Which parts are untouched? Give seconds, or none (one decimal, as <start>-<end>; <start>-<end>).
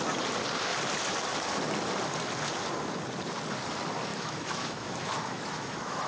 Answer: 0.0-4.1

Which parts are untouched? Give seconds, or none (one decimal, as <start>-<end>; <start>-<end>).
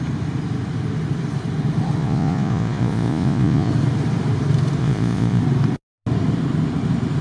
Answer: 0.0-2.0; 3.7-4.8; 5.4-7.2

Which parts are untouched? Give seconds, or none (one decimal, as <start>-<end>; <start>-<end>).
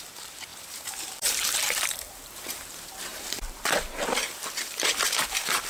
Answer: none